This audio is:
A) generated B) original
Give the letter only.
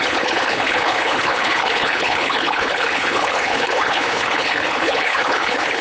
A